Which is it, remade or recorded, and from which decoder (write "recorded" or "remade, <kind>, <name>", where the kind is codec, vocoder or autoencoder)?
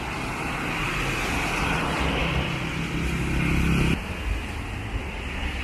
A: recorded